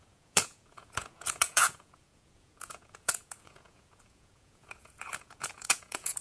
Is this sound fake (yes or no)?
yes